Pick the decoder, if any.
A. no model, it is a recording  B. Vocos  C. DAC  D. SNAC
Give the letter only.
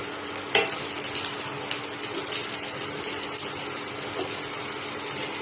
A